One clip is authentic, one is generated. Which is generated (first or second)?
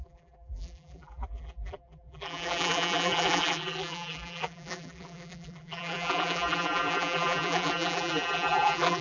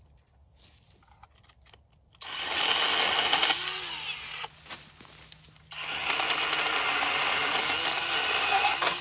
first